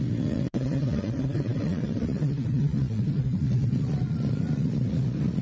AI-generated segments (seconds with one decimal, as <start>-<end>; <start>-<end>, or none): 0.0-5.4